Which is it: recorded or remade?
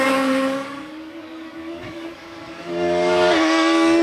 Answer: remade